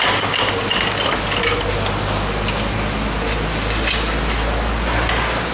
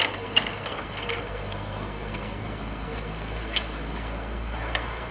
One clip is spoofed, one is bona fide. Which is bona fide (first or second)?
first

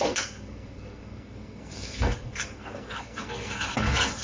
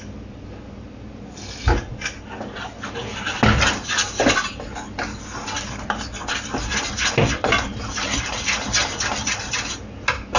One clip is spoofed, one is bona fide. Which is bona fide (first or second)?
second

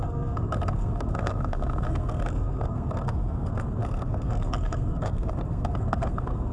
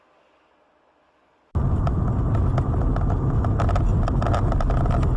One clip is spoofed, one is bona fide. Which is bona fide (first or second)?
second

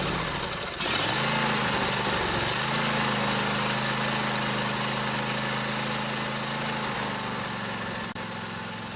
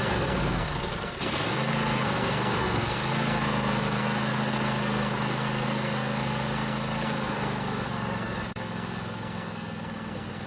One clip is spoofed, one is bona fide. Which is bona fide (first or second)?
first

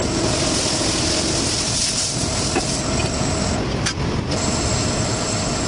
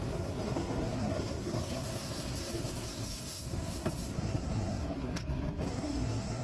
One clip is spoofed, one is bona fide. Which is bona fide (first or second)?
first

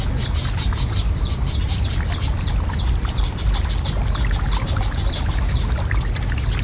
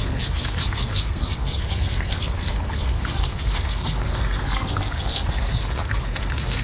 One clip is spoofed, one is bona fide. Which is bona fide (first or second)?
first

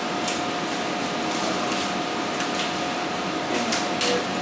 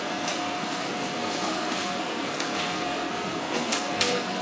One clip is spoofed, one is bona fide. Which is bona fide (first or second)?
first